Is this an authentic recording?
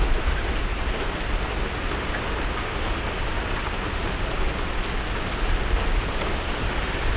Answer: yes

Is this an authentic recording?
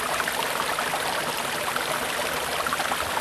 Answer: yes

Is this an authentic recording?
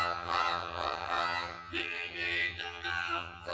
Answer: no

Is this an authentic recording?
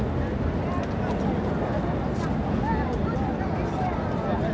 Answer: yes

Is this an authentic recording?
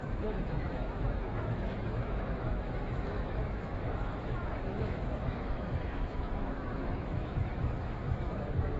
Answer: no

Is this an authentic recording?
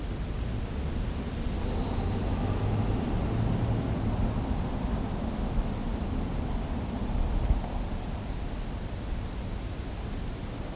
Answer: yes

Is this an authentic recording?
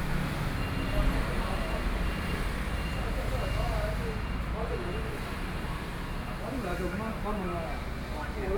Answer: yes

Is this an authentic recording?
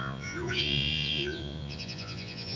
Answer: no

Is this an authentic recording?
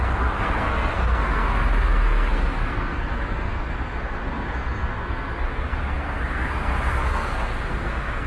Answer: no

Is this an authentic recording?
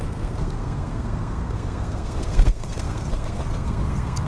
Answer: no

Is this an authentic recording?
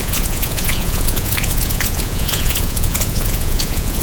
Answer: no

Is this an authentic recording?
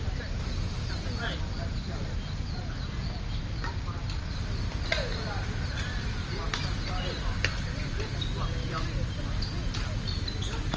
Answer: yes